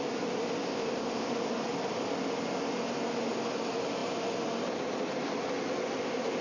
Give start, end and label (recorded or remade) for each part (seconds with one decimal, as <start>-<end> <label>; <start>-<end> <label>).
0.0-0.7 recorded; 0.7-1.3 remade; 1.3-6.4 recorded